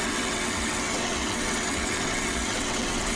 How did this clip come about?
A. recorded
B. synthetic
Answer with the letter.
B